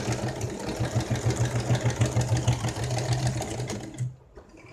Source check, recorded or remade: recorded